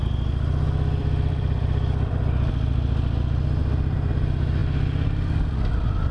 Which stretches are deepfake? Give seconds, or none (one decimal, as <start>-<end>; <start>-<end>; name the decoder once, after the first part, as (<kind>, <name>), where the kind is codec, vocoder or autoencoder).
1.0-2.8 (vocoder, BigVGAN v2); 3.6-4.1